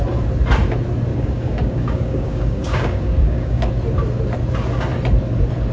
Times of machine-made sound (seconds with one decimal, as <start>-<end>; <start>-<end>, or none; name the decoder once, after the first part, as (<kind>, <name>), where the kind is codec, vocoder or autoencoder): 1.1-3.7 (codec, DAC)